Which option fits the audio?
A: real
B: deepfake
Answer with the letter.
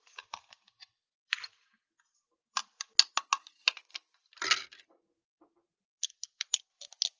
A